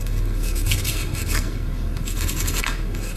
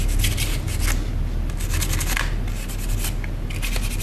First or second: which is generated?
first